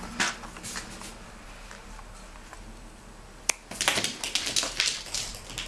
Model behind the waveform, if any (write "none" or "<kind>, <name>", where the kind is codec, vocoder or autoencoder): none